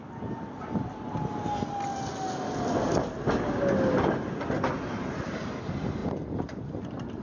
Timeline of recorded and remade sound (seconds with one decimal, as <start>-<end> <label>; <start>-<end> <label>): 0.0-0.6 remade; 0.6-6.0 recorded; 6.0-7.2 remade